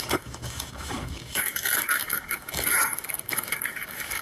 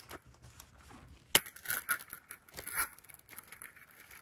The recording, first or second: second